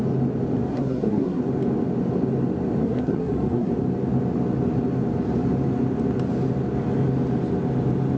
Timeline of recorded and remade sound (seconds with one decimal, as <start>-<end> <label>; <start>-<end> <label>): 0.0-0.7 recorded; 0.7-1.4 remade; 1.4-2.8 recorded; 2.8-3.7 remade; 3.7-8.2 recorded